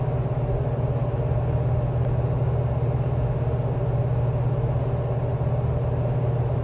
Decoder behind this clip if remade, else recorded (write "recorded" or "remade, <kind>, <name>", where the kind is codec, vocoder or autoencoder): recorded